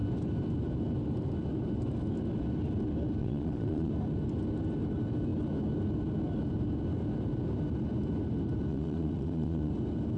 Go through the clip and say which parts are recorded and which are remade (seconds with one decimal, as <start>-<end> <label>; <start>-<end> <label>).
0.0-3.2 recorded; 3.2-3.9 remade; 3.9-8.7 recorded; 8.7-9.7 remade; 9.7-10.2 recorded